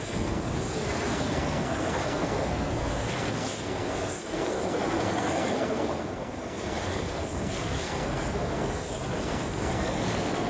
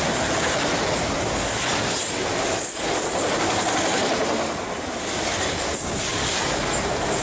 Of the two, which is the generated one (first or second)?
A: first